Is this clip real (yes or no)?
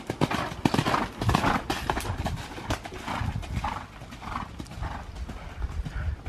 yes